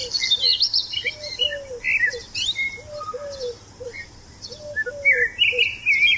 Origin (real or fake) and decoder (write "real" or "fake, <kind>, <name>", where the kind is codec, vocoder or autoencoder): real